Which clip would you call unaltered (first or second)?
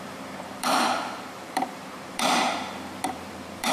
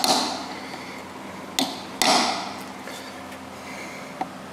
second